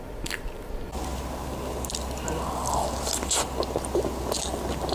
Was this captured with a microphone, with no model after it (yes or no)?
yes